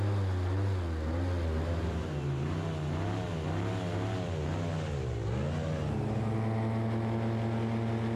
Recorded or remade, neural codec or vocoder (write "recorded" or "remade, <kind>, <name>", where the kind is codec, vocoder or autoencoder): recorded